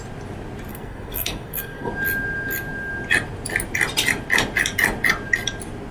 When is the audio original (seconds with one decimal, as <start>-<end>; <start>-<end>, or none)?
0.0-0.7; 1.9-5.9